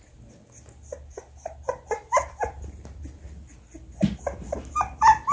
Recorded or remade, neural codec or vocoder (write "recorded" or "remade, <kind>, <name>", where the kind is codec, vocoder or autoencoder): recorded